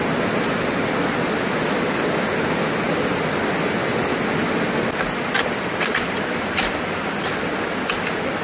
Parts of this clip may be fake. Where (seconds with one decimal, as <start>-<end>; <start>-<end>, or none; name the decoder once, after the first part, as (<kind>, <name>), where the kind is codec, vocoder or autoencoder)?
none